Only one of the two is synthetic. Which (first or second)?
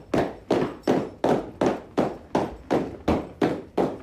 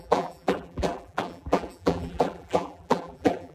second